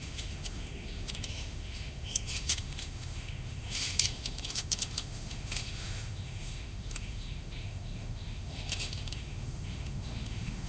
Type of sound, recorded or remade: remade